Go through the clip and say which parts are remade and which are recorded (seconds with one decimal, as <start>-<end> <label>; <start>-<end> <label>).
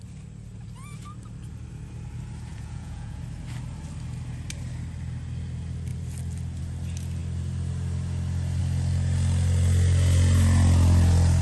0.0-2.5 recorded; 2.5-3.2 remade; 3.2-11.4 recorded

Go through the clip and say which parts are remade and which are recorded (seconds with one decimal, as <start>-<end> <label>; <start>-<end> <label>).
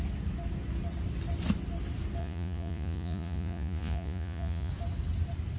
0.0-2.2 recorded; 2.2-4.7 remade; 4.7-5.6 recorded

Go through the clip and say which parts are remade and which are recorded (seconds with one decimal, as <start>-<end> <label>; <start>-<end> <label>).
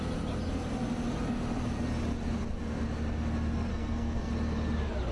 0.0-3.7 recorded; 3.7-4.3 remade; 4.3-5.1 recorded